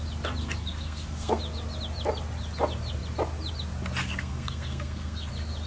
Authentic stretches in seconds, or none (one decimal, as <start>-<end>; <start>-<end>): 0.0-0.4; 1.4-4.0; 5.3-5.7

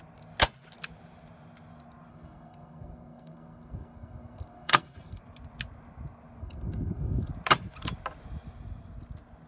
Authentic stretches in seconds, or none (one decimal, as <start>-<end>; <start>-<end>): 0.0-2.1; 5.2-6.4; 7.3-9.5

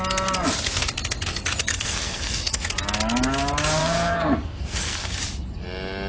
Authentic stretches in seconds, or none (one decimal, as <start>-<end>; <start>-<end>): 0.0-1.6; 2.7-3.8; 5.2-6.1

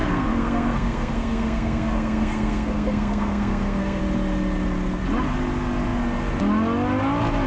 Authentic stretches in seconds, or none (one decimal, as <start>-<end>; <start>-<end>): 4.0-7.5

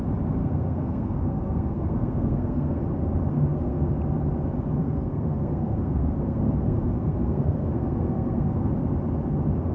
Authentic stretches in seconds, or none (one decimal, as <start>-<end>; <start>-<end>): 0.0-0.4; 2.8-3.3; 3.9-4.8; 8.7-9.7

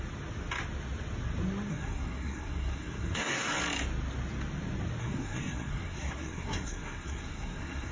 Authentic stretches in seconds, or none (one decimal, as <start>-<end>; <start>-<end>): 0.0-1.7; 3.5-5.0